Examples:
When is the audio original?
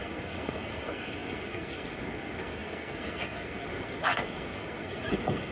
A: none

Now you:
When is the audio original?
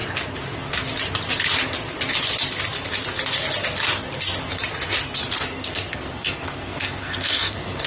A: 0.0-5.4